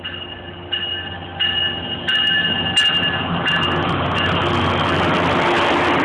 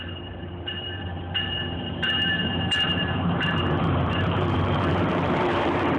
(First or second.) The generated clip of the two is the second